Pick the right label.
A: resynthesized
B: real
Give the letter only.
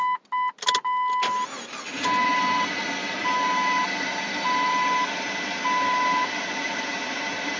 B